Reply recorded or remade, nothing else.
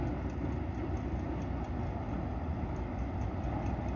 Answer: recorded